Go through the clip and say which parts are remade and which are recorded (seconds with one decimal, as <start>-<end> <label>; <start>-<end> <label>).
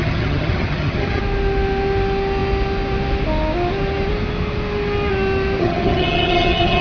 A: 0.0-1.2 remade; 1.2-5.6 recorded; 5.6-6.8 remade